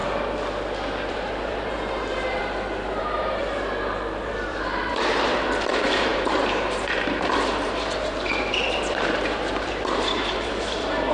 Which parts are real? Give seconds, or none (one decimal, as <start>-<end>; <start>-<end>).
0.0-1.1; 2.4-3.0; 3.4-4.2